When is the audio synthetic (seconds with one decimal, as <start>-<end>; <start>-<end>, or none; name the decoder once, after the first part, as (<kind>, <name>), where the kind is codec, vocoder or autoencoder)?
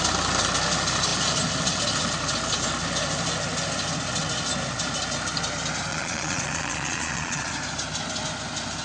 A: 5.9-7.5 (vocoder, Vocos)